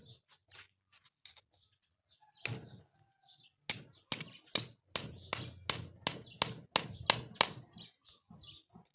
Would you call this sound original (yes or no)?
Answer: yes